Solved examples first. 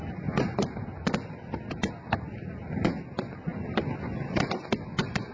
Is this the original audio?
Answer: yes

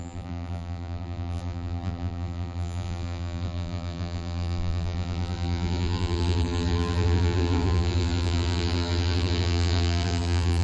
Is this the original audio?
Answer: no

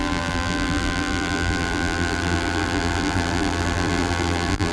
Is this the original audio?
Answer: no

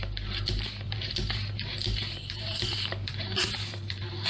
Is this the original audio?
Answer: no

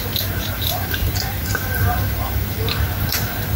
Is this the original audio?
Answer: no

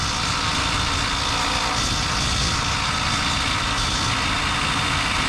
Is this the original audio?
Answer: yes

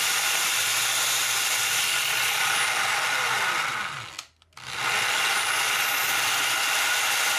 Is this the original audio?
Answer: yes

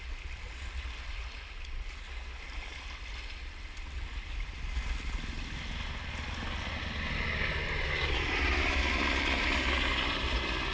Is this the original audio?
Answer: yes